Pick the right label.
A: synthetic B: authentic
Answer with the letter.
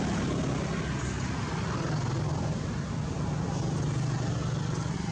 B